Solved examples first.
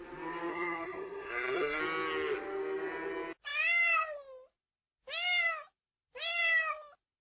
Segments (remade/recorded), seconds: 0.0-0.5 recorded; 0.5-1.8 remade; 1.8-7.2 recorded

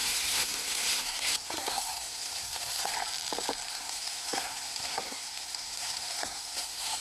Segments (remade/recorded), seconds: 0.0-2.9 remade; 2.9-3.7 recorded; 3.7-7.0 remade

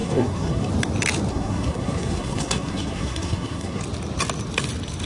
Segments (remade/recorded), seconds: 0.0-0.7 remade; 0.7-1.3 recorded; 1.3-3.8 remade; 3.8-5.1 recorded

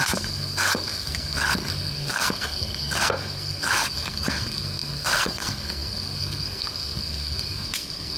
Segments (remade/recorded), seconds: 0.0-8.2 remade